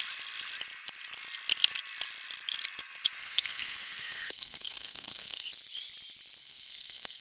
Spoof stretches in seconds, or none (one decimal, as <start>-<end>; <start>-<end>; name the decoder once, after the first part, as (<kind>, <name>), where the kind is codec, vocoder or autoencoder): 3.2-5.5 (codec, SNAC); 6.4-7.2

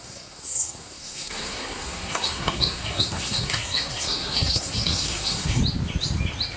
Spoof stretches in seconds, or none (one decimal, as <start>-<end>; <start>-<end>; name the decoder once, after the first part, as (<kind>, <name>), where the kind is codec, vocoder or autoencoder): 0.0-5.6 (codec, SNAC)

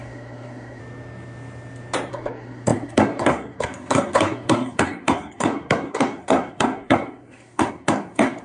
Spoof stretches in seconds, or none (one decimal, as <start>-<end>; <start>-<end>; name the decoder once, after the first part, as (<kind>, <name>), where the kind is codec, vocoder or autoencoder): 0.0-0.8 (codec, SNAC); 2.1-8.4